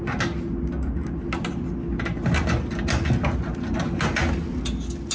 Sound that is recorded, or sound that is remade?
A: recorded